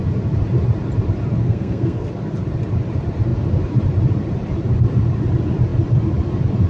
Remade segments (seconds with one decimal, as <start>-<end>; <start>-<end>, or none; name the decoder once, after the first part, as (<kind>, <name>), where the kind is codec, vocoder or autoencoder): 1.4-2.1 (codec, SNAC)